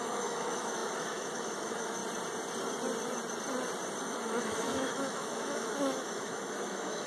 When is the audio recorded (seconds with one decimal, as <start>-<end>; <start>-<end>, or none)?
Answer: 2.0-4.0